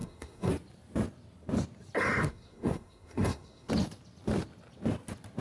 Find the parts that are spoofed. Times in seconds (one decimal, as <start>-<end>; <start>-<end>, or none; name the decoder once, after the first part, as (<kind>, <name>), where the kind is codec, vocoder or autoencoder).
0.0-0.5 (codec, SNAC); 2.3-3.7